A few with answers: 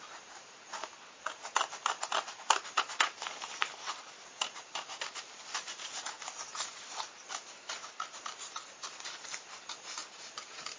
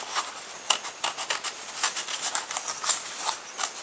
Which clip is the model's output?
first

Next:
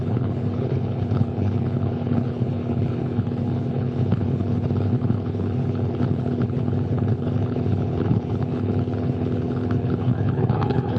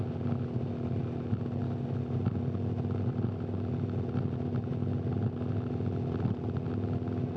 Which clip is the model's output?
first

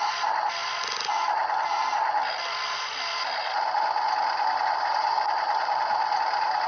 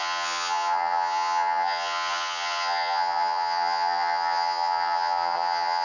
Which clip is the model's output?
second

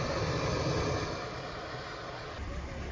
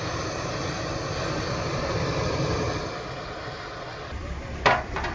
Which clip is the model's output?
second